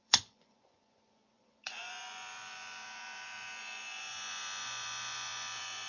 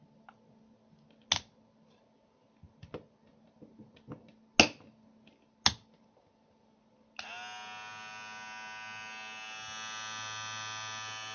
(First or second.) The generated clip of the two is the first